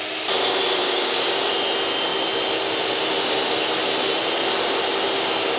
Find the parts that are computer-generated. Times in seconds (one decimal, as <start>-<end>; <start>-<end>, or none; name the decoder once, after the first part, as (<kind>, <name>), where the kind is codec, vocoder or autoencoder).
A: 0.8-1.5 (codec, DAC)